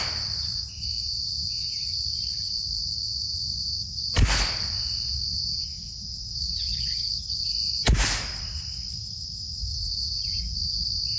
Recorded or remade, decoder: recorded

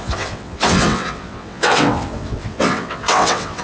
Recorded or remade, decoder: remade, vocoder, WaveNeXt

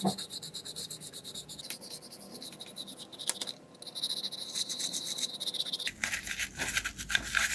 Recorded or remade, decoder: recorded